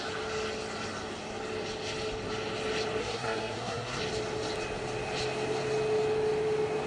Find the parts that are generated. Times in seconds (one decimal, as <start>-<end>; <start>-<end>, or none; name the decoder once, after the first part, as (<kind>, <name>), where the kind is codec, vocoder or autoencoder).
3.0-4.0 (codec, SNAC)